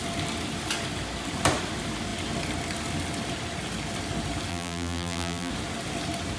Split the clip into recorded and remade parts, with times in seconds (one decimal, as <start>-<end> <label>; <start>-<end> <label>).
0.0-4.5 recorded; 4.5-5.5 remade; 5.5-6.4 recorded